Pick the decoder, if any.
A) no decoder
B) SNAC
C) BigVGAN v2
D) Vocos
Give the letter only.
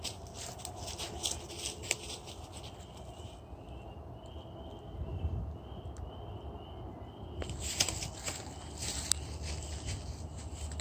A